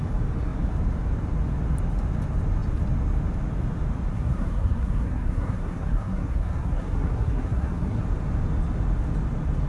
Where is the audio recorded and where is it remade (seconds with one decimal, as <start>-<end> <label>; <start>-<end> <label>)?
0.0-4.1 recorded; 4.1-8.0 remade; 8.0-9.7 recorded